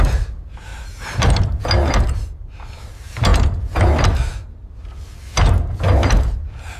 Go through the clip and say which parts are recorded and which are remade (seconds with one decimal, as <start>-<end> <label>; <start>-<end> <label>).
0.0-0.7 recorded; 0.7-1.6 remade; 1.6-6.8 recorded